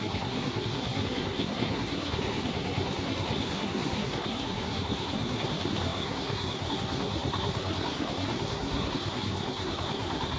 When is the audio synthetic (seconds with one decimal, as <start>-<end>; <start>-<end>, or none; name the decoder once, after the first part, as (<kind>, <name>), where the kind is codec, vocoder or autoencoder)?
0.0-10.4 (codec, SNAC)